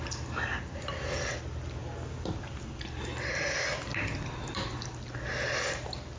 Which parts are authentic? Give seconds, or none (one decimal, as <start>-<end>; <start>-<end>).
0.0-6.2

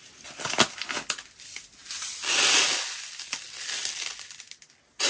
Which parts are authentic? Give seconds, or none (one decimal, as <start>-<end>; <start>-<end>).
0.0-5.1

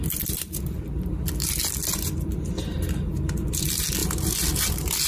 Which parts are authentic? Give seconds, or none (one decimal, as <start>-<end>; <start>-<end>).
0.0-5.1

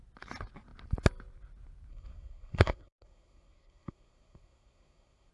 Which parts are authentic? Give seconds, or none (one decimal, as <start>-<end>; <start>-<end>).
0.0-1.9

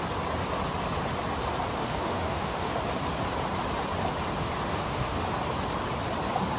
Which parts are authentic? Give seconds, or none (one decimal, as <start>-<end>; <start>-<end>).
0.0-1.8; 2.7-4.7; 5.2-6.6

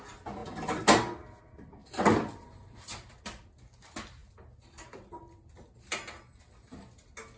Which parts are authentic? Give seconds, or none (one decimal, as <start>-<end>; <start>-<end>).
0.0-7.4

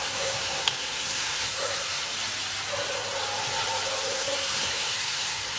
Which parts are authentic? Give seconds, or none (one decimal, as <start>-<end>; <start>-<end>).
2.1-4.0